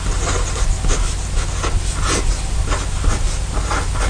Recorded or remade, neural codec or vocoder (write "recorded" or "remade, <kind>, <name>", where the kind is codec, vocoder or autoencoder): recorded